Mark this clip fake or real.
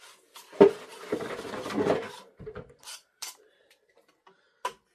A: real